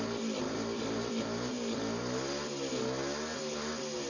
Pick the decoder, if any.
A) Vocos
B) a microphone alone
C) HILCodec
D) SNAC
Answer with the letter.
B